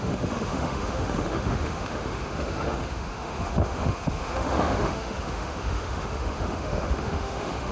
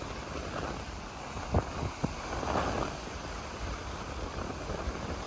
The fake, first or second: first